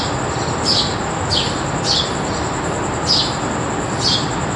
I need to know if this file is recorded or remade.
recorded